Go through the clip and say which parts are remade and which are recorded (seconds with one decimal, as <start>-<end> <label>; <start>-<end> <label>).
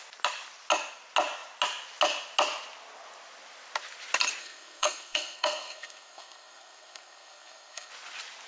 0.0-4.4 recorded; 4.4-7.9 remade; 7.9-8.5 recorded